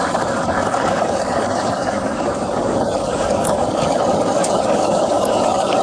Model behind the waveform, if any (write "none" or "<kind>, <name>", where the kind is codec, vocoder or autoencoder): codec, DAC